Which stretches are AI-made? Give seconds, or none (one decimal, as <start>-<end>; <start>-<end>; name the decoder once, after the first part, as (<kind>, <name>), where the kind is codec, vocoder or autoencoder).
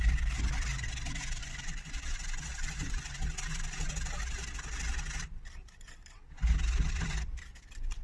1.4-3.2 (vocoder, Vocos)